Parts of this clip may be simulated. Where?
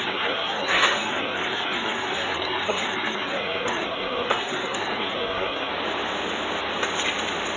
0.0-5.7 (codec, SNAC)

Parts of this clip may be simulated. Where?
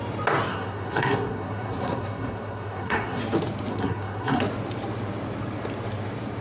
0.5-3.2 (codec, SNAC); 3.7-4.4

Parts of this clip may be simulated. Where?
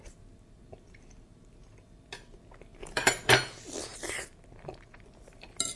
2.8-3.3 (vocoder, BigVGAN v2)